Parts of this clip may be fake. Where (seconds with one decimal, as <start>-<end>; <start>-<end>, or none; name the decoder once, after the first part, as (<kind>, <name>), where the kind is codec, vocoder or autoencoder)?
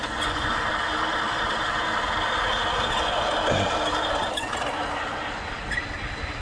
0.0-0.7 (vocoder, Vocos)